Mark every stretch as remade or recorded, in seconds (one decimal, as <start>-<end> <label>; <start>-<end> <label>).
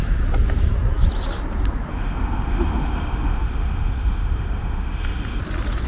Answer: 0.0-1.9 recorded; 1.9-5.4 remade; 5.4-5.9 recorded